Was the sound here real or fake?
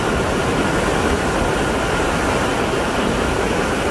real